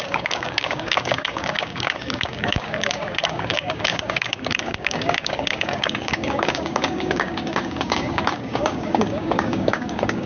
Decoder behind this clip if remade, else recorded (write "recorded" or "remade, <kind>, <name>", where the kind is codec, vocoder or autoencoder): remade, codec, DAC